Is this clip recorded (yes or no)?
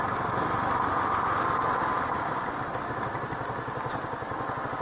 yes